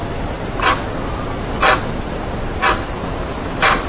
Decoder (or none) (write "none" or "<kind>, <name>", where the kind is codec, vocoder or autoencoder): none